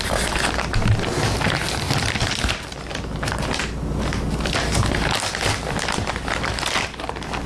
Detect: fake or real real